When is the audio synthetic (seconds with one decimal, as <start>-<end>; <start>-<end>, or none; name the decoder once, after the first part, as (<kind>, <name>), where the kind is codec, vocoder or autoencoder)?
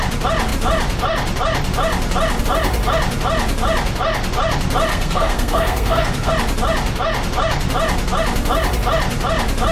4.9-6.3 (codec, SNAC)